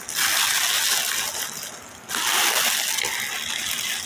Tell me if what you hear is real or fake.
real